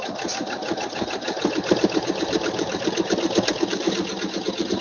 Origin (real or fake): real